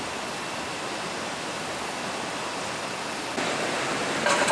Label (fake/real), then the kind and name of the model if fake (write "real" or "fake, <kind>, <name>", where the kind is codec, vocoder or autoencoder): real